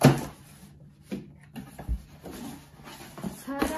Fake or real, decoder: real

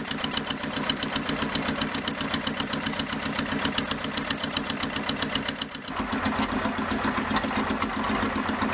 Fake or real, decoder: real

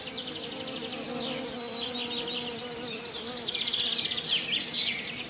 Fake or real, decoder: real